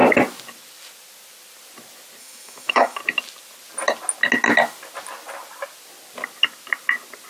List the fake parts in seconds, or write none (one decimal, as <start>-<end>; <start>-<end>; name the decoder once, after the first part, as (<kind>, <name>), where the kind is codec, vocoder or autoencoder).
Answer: 2.2-3.0 (autoencoder, DAC-VAE)